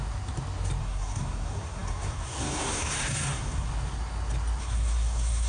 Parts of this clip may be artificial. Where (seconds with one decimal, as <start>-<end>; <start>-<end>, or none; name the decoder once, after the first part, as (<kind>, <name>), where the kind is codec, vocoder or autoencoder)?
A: 0.8-3.7 (codec, SNAC); 4.6-5.5